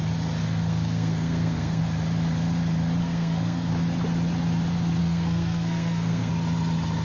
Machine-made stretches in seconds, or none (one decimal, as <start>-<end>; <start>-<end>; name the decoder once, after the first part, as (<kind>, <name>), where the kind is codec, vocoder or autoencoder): 0.4-1.8 (codec, SNAC); 3.0-3.7; 5.0-6.3

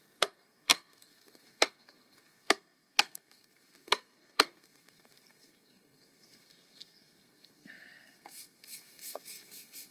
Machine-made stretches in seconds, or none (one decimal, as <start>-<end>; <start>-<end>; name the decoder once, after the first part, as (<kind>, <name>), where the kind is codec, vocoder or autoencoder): 0.0-9.9 (codec, SNAC)

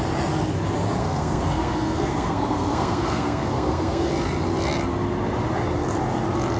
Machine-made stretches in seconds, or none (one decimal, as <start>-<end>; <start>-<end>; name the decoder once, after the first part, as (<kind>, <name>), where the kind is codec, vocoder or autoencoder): 1.0-4.1 (codec, SNAC)

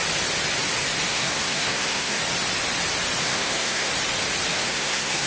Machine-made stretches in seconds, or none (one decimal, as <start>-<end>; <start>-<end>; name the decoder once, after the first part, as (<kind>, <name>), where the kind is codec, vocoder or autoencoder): 1.1-2.2 (codec, SNAC); 3.2-3.9; 4.5-5.3

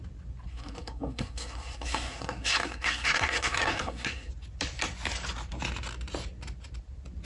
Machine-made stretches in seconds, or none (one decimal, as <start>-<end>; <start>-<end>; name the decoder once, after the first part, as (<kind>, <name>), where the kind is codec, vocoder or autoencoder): 0.5-4.3 (codec, SNAC)

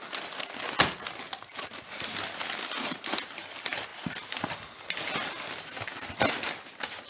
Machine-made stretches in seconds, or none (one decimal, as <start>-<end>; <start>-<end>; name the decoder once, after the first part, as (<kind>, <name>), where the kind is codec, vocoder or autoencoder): none

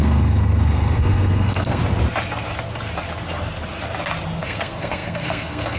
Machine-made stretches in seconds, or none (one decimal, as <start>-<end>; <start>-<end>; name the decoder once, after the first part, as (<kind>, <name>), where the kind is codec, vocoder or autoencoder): 0.0-1.8 (codec, SNAC); 4.4-5.8